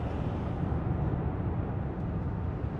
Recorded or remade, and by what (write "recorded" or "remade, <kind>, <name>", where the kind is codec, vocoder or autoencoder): recorded